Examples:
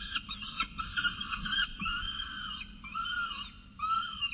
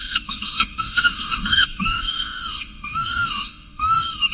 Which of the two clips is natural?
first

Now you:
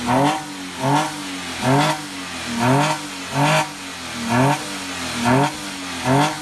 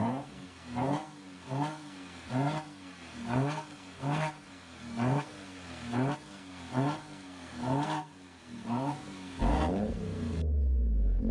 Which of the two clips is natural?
first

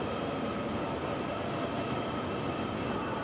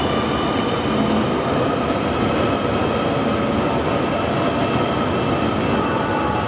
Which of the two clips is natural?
second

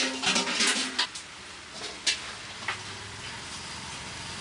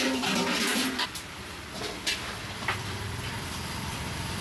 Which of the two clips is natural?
first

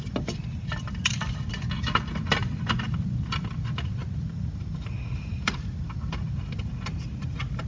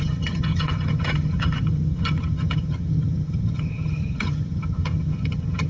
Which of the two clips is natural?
first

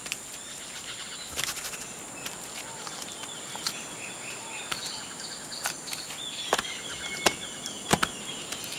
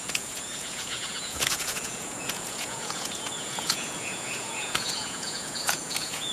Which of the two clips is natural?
first